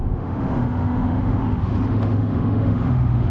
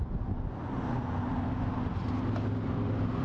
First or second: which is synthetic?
first